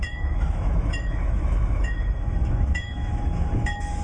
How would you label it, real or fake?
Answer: fake